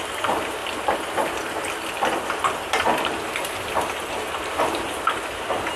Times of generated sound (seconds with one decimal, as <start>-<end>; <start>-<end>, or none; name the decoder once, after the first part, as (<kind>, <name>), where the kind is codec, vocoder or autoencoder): 0.0-0.6 (vocoder, BigVGAN v2); 4.1-5.8